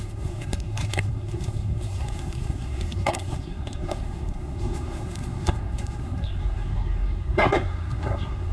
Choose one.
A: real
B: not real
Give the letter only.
B